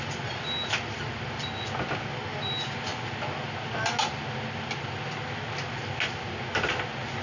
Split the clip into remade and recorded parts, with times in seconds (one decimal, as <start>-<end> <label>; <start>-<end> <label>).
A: 0.0-7.2 recorded